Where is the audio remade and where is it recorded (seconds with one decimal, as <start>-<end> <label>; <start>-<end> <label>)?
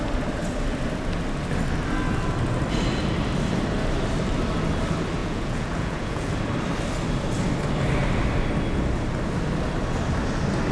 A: 0.0-5.2 recorded; 5.2-6.3 remade; 6.3-10.7 recorded